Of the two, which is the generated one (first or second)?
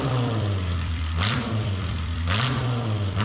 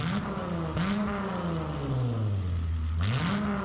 first